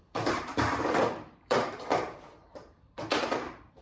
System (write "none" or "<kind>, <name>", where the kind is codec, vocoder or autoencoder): vocoder, BigVGAN v2